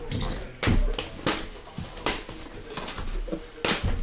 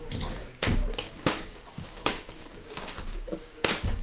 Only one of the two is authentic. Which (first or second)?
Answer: first